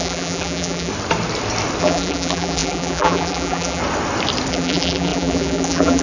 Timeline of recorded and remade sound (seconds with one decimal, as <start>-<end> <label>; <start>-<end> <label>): 0.0-0.9 remade; 0.9-1.8 recorded; 1.8-3.8 remade; 3.8-4.5 recorded; 4.5-6.0 remade